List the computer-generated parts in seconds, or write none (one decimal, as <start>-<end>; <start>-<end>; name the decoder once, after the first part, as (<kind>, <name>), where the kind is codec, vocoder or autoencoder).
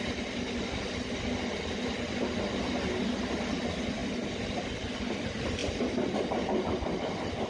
none